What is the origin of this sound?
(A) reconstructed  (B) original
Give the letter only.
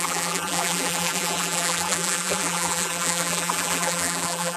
A